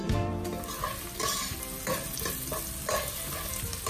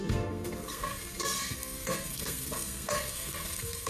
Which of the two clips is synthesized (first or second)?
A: second